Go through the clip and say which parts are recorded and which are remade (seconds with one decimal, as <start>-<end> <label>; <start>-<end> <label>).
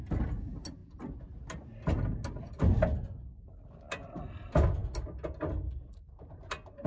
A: 0.0-6.9 recorded